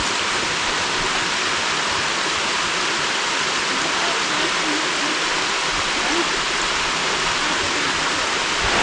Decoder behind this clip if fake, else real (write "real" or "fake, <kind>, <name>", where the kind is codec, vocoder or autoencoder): real